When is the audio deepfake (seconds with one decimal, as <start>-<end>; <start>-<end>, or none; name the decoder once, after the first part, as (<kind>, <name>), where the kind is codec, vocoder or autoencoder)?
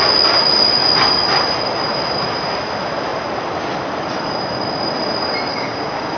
5.5-6.2 (codec, DAC)